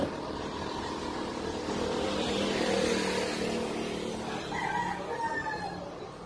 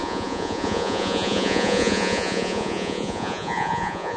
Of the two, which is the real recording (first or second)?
first